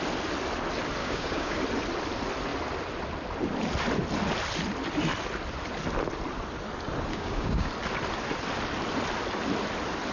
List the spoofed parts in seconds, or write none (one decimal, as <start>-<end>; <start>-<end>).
1.0-1.6; 7.1-7.7